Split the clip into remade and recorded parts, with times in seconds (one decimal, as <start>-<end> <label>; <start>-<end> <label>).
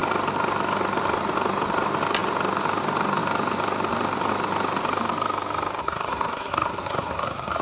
0.0-5.8 recorded; 5.8-7.6 remade